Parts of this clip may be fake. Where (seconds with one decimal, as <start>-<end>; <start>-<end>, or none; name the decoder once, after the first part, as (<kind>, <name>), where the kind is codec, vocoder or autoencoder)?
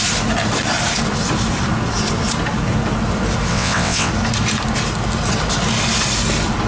3.5-4.1 (vocoder, WaveNeXt)